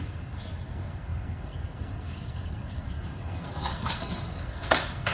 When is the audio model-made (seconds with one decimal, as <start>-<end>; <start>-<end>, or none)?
0.0-5.1